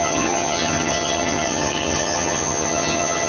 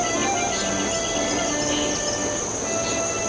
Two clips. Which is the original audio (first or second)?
second